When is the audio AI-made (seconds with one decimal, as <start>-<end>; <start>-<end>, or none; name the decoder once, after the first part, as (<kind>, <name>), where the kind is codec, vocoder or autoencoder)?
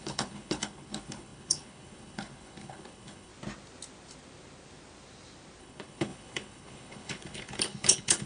0.0-3.3 (codec, HILCodec); 5.6-8.3